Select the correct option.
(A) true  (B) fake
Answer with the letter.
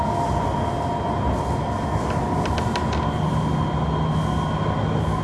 A